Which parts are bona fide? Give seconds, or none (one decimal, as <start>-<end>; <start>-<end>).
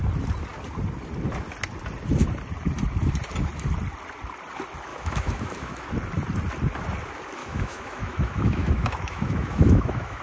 0.0-4.9; 5.9-7.4